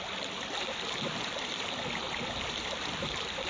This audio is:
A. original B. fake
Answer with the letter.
A